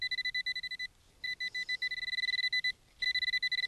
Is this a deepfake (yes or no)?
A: no